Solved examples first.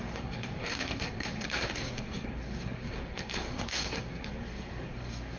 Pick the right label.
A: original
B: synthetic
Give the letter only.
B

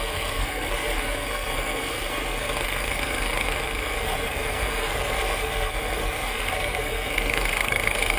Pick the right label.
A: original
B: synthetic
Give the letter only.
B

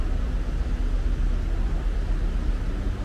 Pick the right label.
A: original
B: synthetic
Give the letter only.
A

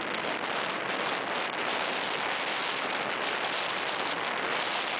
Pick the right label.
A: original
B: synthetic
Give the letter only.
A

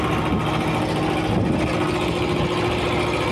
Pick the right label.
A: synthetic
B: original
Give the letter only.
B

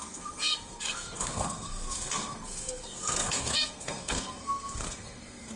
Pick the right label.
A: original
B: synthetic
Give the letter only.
B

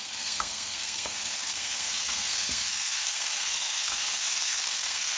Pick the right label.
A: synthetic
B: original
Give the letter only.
A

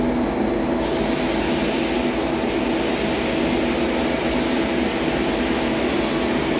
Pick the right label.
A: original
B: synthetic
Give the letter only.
A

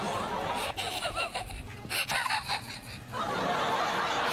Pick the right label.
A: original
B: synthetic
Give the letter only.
A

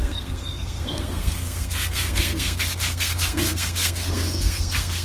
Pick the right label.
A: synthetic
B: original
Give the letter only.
A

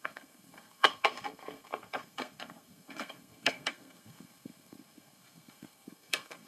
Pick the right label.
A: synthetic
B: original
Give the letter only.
A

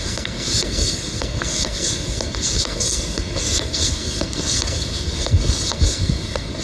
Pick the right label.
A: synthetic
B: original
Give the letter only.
A